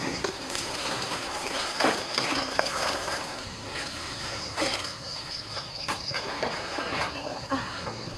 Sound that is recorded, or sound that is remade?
remade